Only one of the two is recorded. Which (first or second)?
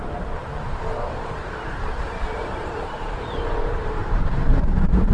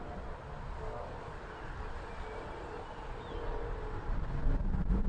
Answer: second